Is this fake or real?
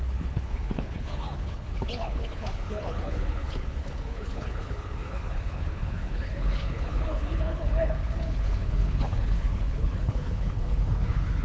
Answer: fake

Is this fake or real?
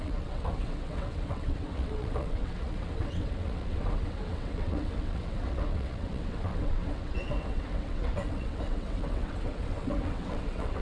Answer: fake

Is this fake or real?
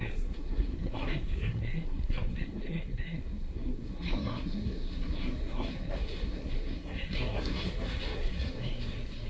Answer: fake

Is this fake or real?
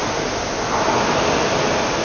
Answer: real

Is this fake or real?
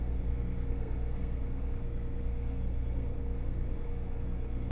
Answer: fake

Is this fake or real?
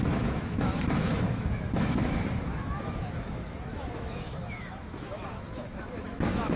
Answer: fake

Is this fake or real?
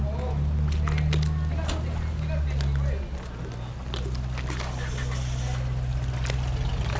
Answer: real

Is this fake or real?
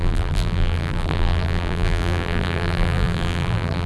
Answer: fake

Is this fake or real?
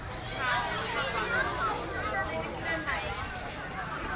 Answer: real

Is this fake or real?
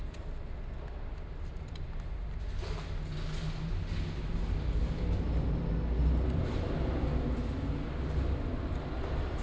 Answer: real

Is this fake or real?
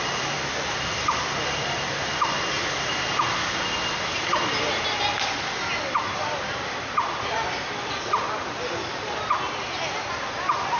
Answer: real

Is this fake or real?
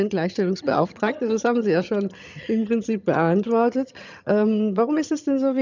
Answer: fake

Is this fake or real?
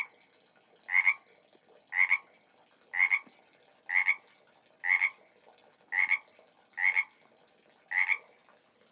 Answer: real